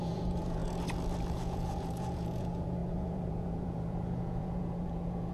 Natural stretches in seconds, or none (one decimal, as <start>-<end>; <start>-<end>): 0.6-1.3